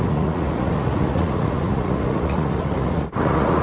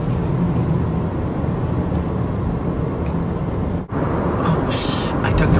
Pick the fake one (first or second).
first